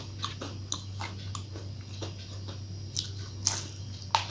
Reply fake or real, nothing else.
real